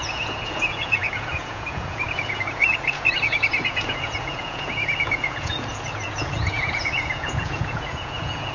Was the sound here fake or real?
fake